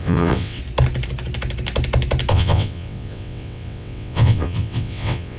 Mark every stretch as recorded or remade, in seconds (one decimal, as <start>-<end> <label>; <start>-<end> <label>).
0.0-0.6 remade; 0.6-2.3 recorded; 2.3-5.4 remade